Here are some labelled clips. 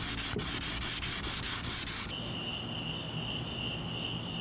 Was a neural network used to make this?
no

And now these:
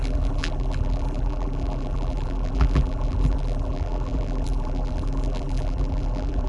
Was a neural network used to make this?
yes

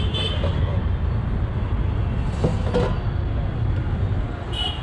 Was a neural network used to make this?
no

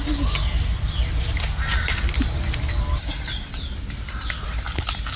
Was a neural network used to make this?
no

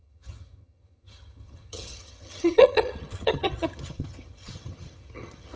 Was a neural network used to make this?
yes